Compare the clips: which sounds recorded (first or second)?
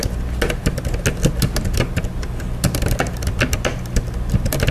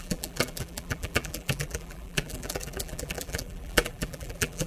first